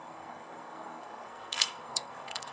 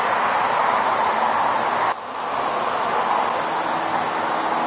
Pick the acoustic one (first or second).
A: second